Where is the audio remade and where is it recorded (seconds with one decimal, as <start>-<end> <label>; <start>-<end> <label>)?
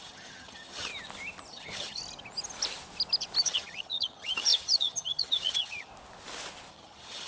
0.0-0.9 remade; 0.9-1.5 recorded; 1.5-2.0 remade; 2.0-3.4 recorded; 3.4-5.9 remade; 5.9-6.7 recorded; 6.7-7.3 remade